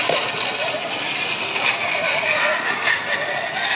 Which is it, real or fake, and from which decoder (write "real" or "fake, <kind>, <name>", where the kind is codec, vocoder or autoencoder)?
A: real